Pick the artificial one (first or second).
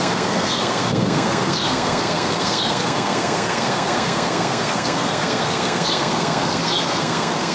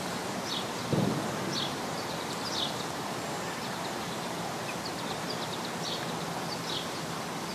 first